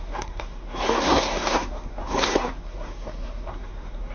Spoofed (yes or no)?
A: yes